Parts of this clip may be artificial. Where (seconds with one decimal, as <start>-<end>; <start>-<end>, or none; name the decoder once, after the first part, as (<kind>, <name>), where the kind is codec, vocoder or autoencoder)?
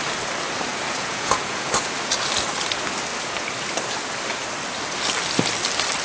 0.7-1.7 (vocoder, Vocos)